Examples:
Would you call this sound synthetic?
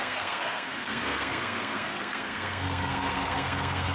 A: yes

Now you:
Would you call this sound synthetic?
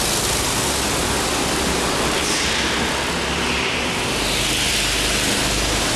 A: no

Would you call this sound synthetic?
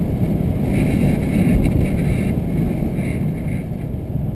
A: no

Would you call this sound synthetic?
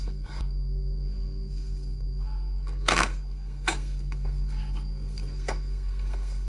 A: yes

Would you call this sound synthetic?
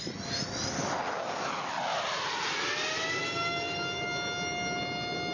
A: no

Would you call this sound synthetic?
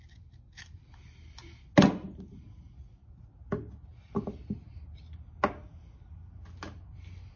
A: no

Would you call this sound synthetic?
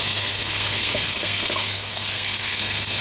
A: yes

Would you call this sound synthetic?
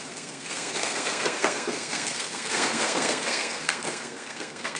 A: yes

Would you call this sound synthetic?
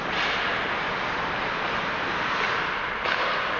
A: no